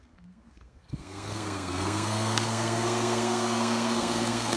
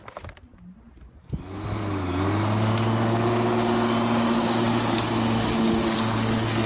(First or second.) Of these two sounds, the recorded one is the second